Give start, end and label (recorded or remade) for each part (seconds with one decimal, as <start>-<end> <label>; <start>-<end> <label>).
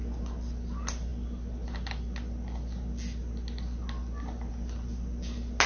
0.0-5.7 recorded